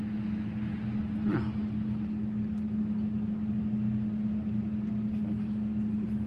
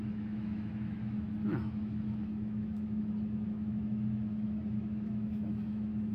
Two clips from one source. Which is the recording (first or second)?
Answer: first